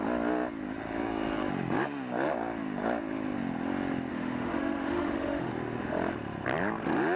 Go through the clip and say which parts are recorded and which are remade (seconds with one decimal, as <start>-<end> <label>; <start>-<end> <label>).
0.0-4.1 recorded; 4.1-5.5 remade; 5.5-7.2 recorded